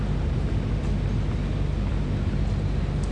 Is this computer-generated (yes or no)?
no